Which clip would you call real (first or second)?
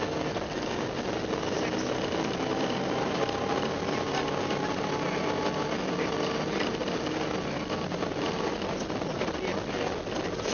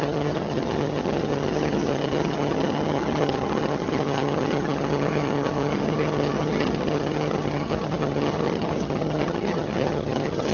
first